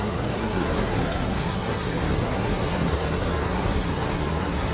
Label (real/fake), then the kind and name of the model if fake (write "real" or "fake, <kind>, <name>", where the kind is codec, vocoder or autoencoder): fake, codec, SNAC